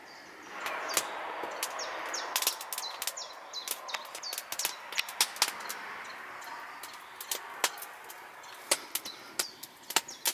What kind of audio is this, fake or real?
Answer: real